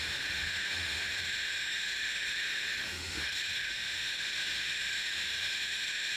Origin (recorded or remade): remade